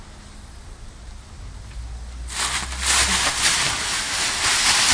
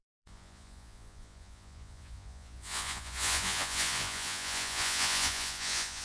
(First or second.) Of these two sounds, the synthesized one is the second